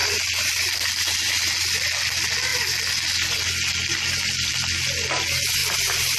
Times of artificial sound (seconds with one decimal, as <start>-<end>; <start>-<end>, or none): none